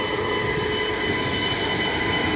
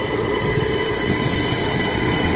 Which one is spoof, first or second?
second